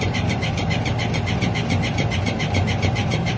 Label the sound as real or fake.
fake